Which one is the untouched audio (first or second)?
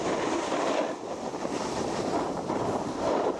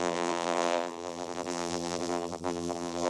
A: first